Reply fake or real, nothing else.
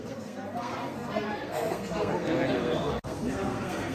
fake